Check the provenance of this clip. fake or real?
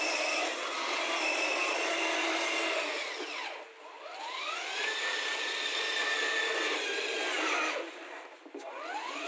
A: fake